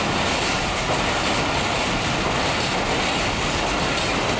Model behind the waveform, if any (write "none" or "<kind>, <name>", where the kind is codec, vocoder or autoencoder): none